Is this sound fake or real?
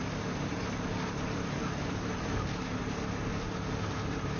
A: real